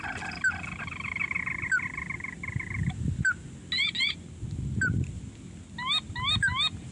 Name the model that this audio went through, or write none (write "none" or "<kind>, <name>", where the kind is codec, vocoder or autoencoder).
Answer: none